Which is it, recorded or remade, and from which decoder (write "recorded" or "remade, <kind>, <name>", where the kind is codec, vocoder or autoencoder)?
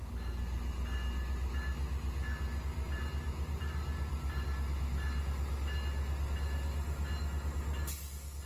recorded